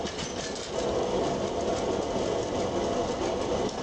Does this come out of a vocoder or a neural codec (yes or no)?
no